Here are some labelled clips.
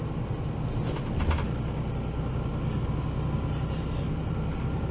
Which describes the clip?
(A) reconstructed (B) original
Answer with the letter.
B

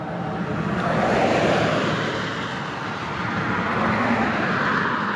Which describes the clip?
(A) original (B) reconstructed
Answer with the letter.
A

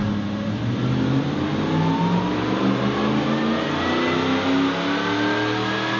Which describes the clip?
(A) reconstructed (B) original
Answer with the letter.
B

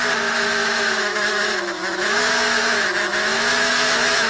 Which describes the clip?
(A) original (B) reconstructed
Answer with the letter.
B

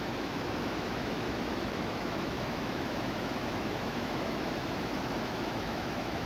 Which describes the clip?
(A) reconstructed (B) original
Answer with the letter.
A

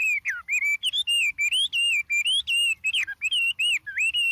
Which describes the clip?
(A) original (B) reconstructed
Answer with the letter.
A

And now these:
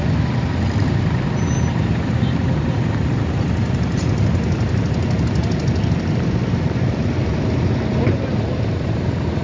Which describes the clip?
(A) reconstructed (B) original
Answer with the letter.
B